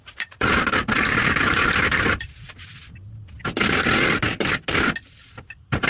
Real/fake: real